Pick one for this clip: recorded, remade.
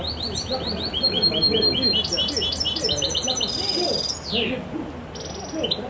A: recorded